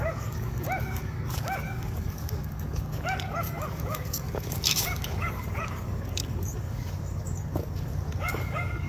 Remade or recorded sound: remade